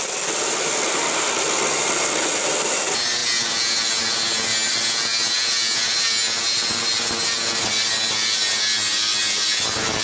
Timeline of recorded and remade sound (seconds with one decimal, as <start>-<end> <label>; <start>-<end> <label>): 0.0-10.0 recorded